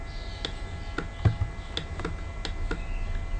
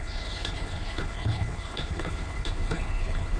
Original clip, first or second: first